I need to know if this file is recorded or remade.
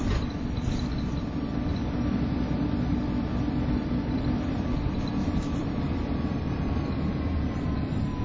remade